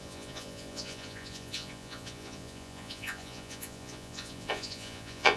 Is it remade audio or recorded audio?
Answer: remade